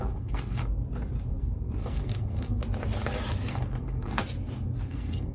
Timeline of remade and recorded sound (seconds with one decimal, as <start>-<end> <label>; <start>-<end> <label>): 0.0-0.6 remade; 0.6-1.3 recorded; 1.3-2.6 remade; 2.6-3.5 recorded; 3.5-4.2 remade; 4.2-4.8 recorded; 4.8-5.3 remade